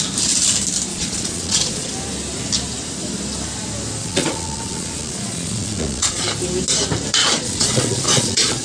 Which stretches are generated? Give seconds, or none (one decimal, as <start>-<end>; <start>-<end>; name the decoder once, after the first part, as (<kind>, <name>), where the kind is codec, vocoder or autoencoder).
0.9-1.9 (vocoder, Vocos); 4.0-6.2; 7.2-8.6